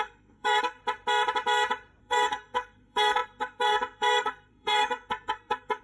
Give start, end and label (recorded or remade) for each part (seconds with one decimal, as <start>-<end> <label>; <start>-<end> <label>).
0.0-0.8 remade; 0.8-2.0 recorded; 2.0-5.8 remade